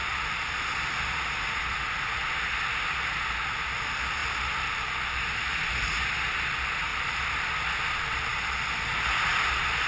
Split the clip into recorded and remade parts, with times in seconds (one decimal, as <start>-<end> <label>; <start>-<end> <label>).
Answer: 0.0-4.2 recorded; 4.2-5.9 remade; 5.9-6.9 recorded; 6.9-7.5 remade; 7.5-9.9 recorded